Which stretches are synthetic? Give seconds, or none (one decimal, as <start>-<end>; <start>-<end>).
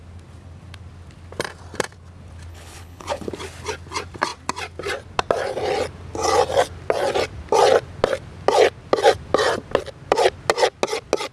2.5-3.3